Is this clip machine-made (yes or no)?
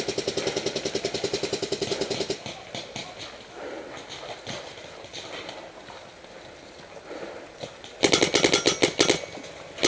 no